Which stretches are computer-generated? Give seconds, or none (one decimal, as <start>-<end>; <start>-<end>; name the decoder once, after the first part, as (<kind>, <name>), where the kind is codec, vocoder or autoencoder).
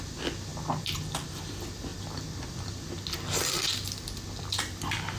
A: none